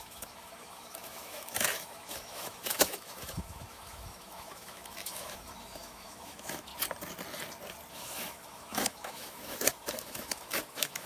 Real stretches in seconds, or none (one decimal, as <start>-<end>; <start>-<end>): 6.7-7.9